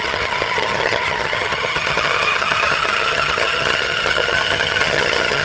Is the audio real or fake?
fake